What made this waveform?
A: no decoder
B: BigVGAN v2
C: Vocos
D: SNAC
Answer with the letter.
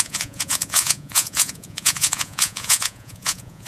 C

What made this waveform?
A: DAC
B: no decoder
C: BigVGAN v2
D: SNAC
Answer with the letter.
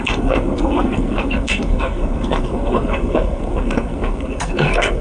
D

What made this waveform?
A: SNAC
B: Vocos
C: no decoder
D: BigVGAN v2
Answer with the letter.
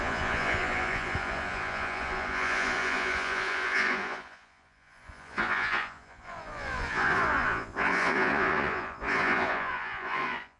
B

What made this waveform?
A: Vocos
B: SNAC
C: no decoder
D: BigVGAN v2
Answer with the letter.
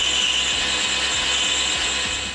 C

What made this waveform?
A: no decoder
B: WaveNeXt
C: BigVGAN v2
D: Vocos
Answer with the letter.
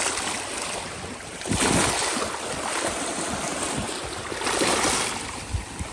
A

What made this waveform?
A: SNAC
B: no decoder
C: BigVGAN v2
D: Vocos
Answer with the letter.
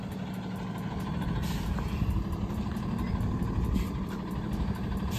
B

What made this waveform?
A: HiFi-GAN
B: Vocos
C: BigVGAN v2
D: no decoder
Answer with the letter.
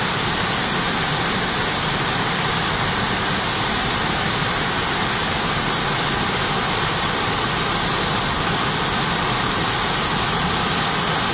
D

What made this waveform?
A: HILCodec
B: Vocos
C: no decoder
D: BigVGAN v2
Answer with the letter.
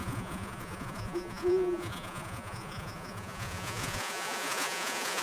B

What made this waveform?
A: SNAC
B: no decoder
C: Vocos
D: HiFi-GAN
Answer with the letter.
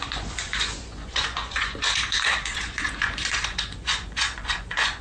C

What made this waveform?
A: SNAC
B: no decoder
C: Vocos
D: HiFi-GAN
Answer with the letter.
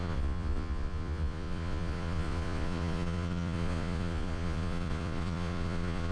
C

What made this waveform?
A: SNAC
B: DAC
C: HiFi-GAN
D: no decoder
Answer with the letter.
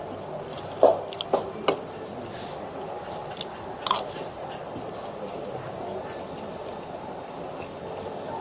D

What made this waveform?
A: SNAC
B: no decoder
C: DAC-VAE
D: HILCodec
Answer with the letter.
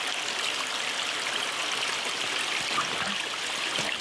B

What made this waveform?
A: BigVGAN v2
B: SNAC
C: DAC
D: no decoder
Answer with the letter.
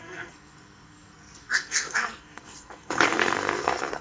B